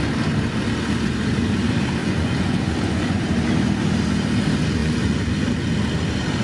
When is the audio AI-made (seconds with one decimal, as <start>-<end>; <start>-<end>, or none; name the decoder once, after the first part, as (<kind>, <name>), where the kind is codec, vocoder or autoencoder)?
2.0-3.2 (vocoder, Vocos); 4.8-5.3